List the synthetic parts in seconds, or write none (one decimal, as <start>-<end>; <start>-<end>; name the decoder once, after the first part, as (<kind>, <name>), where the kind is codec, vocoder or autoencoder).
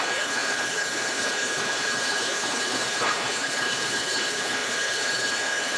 0.0-5.8 (codec, HILCodec)